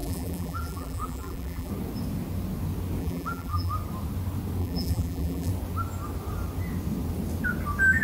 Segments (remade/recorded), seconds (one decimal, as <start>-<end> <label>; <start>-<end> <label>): 0.0-1.7 remade; 1.7-3.0 recorded; 3.0-3.7 remade; 3.7-4.6 recorded; 4.6-5.5 remade; 5.5-8.0 recorded